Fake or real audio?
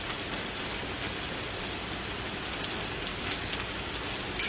real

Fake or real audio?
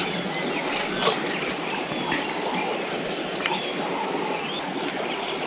real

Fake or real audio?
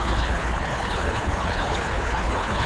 fake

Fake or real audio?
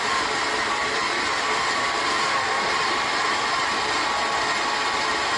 real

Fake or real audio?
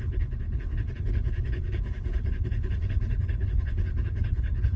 fake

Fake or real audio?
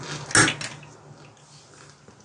real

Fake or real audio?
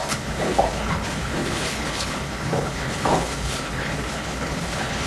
fake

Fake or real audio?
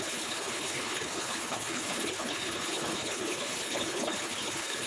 fake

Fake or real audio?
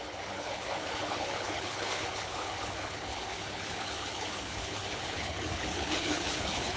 fake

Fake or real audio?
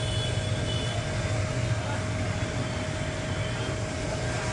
real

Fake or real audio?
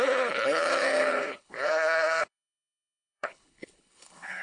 fake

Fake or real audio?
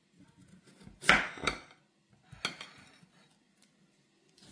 real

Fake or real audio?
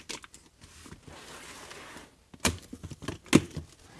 real